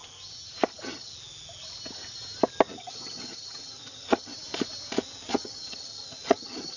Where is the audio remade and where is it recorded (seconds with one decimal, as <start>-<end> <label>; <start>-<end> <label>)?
0.0-0.7 recorded; 0.7-1.1 remade; 1.1-2.8 recorded; 2.8-4.3 remade; 4.3-5.3 recorded; 5.3-6.8 remade